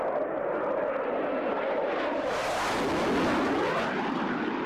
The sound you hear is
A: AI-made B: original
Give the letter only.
B